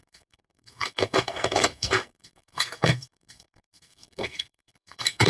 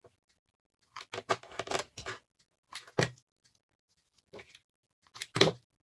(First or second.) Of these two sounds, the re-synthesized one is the first